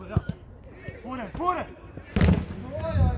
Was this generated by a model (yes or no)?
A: no